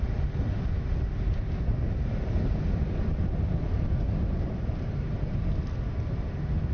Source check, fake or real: real